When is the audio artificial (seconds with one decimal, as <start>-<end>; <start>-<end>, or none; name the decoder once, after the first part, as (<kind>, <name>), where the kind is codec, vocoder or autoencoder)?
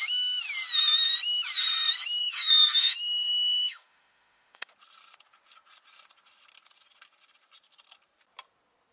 2.2-4.7 (autoencoder, DAC-VAE)